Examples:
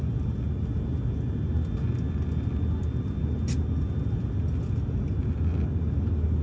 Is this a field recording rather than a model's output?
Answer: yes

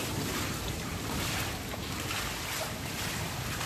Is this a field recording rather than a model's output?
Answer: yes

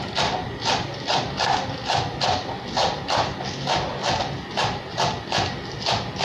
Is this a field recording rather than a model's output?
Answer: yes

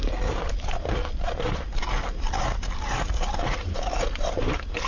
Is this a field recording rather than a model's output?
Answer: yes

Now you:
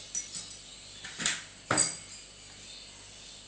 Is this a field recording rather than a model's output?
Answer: yes